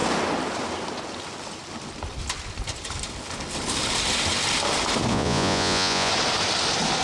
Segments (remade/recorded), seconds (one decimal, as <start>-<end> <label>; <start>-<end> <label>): 0.0-5.1 recorded; 5.1-6.1 remade; 6.1-7.0 recorded